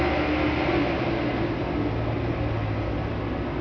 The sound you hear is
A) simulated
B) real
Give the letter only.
B